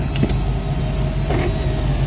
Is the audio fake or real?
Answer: real